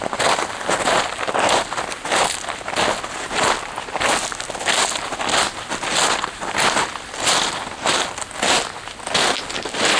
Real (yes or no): yes